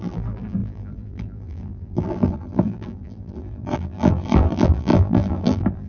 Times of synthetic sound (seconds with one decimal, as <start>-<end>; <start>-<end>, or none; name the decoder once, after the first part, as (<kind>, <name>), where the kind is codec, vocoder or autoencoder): 0.0-5.9 (vocoder, BigVGAN v2)